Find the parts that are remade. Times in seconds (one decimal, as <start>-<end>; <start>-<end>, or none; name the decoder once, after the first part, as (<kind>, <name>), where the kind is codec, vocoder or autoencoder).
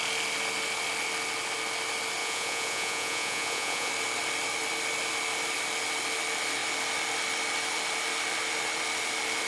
2.2-3.9 (vocoder, Vocos)